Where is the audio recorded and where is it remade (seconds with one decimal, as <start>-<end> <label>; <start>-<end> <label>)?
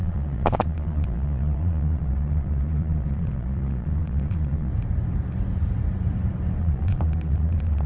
0.0-4.7 remade; 4.7-6.6 recorded; 6.6-7.9 remade